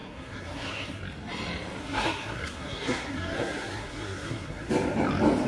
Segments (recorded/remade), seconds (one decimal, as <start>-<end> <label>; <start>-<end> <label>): 0.0-1.0 remade; 1.0-1.8 recorded; 1.8-4.7 remade; 4.7-5.5 recorded